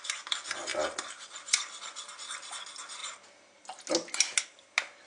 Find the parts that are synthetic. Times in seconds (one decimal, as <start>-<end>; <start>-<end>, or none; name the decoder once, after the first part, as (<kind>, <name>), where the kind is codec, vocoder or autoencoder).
none